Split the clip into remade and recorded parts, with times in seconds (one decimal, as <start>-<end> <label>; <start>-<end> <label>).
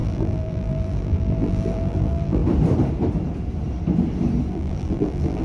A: 0.0-2.4 remade; 2.4-4.5 recorded; 4.5-5.4 remade